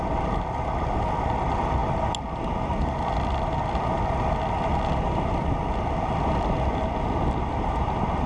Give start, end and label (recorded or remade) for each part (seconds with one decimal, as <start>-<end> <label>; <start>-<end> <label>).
0.0-8.3 recorded